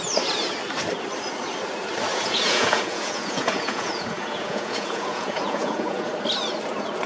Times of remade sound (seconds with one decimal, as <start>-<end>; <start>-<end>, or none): 2.1-6.1